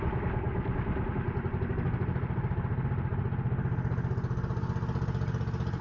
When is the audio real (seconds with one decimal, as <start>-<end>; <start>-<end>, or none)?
0.0-5.8

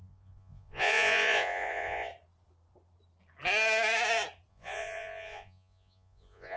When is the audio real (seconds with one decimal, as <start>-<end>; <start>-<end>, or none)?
2.1-4.5